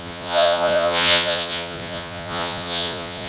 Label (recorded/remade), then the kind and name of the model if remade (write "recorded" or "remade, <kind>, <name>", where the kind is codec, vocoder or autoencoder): remade, vocoder, Vocos